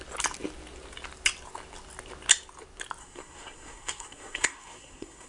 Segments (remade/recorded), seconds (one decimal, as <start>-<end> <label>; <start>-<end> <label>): 0.0-3.0 recorded; 3.0-5.3 remade